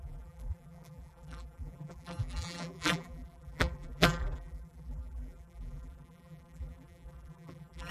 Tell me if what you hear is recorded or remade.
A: remade